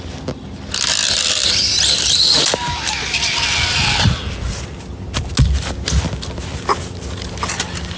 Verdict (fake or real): real